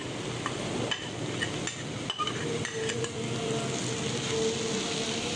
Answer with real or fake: real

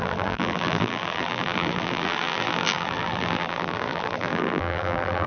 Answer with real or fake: fake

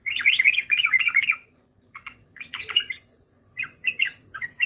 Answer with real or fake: fake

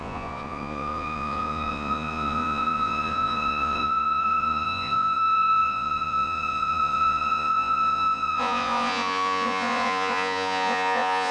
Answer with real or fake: fake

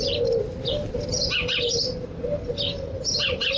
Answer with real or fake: real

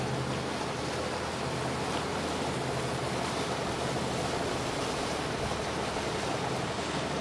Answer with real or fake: real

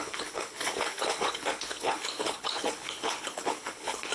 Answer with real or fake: fake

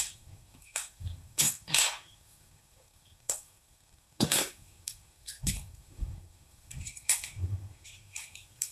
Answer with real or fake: fake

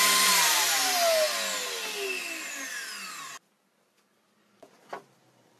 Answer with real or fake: real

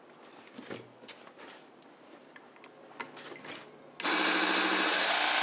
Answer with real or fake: real